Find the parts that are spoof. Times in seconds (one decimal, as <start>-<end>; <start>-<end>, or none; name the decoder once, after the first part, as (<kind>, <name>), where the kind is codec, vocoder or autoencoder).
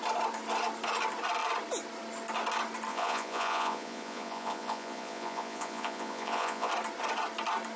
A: 2.9-6.7 (vocoder, Vocos)